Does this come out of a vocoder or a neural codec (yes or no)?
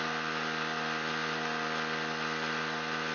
no